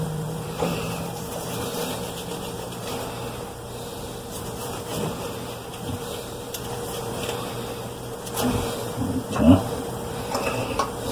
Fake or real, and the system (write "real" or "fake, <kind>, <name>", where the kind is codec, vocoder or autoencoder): fake, vocoder, BigVGAN v2